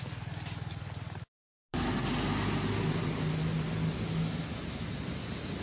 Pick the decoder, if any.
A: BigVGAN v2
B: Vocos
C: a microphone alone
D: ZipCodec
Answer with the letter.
C